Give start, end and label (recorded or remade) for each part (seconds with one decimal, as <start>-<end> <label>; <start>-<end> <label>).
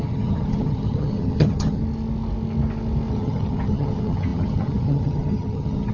0.0-1.8 remade; 1.8-3.1 recorded; 3.1-5.9 remade